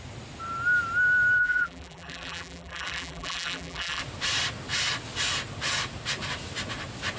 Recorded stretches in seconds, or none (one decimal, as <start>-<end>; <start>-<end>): 0.0-1.4; 4.0-7.2